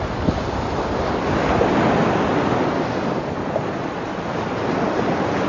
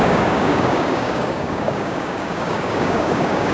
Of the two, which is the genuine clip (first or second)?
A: first